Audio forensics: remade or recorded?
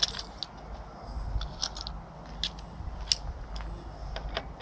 recorded